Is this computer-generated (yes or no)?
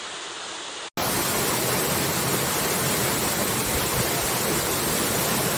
no